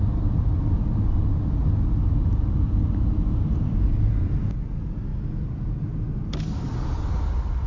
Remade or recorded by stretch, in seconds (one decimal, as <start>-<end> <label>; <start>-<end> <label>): 0.0-3.3 recorded; 3.3-4.1 remade; 4.1-7.7 recorded